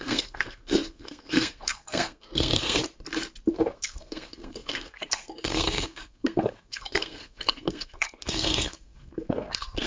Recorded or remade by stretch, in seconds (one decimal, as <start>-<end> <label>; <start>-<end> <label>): 0.0-2.8 remade; 2.8-3.5 recorded; 3.5-9.9 remade